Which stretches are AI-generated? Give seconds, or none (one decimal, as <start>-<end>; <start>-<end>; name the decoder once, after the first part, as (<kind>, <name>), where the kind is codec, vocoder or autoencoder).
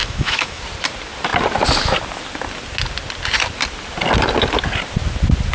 0.0-0.6 (autoencoder, DAC-VAE)